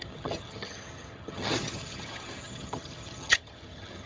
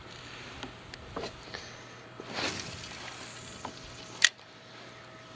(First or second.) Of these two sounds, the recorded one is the second